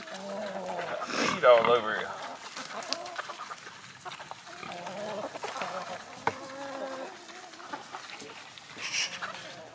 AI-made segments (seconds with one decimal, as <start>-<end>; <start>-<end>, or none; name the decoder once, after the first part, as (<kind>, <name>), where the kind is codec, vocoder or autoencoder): 0.4-0.9 (vocoder, Vocos)